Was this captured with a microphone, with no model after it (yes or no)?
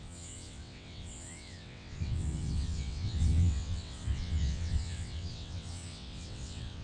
no